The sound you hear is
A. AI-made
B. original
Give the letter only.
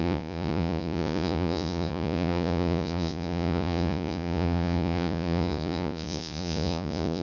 A